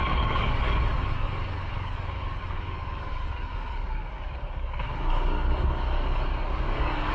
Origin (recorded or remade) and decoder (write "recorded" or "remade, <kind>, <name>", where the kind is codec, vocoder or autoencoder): remade, codec, DAC